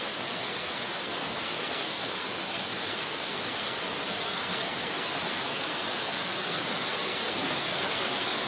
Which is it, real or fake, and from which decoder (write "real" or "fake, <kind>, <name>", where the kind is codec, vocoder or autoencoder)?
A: fake, codec, SNAC